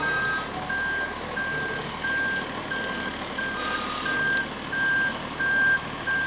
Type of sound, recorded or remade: recorded